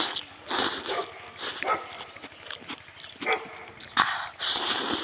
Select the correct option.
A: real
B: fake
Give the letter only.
A